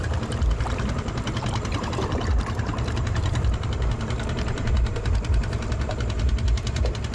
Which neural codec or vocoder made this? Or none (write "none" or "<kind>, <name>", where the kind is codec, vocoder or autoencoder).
vocoder, BigVGAN v2